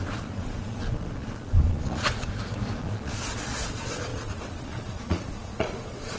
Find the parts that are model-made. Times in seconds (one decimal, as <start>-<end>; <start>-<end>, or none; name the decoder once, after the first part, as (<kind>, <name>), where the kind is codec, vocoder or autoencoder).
0.0-2.3 (vocoder, Vocos); 2.8-6.2